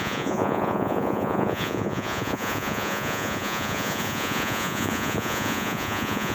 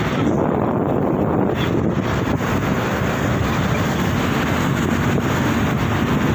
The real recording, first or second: second